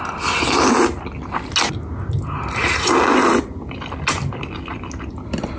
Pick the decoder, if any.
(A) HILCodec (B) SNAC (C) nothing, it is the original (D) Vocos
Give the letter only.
C